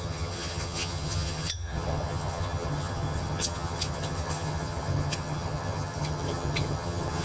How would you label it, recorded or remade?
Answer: remade